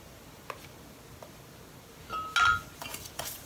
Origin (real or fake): real